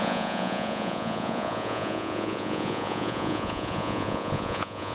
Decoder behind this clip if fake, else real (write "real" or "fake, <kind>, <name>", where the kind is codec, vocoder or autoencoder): fake, vocoder, Vocos